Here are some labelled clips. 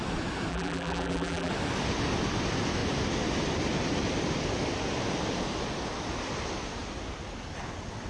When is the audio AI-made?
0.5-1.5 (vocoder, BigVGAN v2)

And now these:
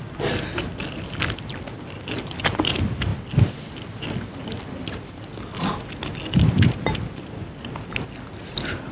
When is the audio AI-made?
none

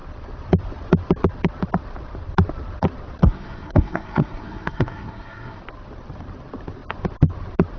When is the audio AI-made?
3.2-5.6 (codec, SNAC)

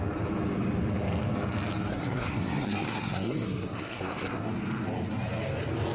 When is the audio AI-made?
1.9-4.5 (codec, SNAC)

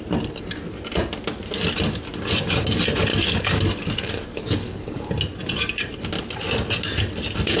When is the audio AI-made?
3.1-5.1 (codec, DAC)

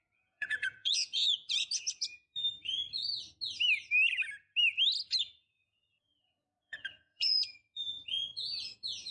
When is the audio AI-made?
0.0-2.3 (vocoder, Vocos); 5.2-9.1